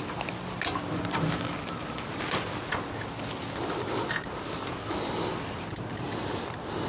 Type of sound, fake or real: real